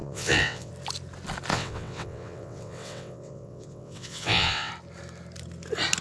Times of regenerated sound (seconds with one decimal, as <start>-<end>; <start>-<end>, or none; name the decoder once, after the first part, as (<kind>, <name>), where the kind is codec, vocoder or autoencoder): 0.0-0.7 (vocoder, WaveNeXt); 1.5-4.7